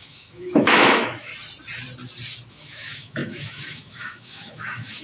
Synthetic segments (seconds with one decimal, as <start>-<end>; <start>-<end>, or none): 0.0-1.3; 2.5-5.0